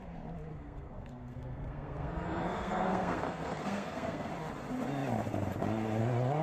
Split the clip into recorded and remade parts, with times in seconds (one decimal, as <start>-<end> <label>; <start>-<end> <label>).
0.0-0.5 recorded; 0.5-4.3 remade; 4.3-6.4 recorded